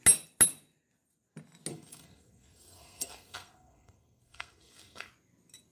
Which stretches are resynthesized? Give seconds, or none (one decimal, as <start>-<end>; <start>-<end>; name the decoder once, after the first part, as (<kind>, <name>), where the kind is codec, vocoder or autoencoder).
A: 1.7-5.1 (codec, SNAC)